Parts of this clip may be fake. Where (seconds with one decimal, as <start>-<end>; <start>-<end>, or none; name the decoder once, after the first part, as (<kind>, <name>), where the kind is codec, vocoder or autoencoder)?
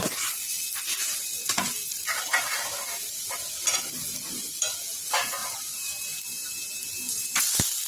none